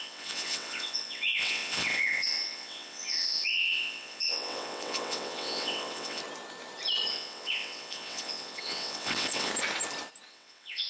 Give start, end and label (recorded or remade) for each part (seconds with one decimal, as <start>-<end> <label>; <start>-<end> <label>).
0.0-6.2 remade; 6.2-7.1 recorded; 7.1-9.5 remade; 9.5-10.3 recorded; 10.3-10.9 remade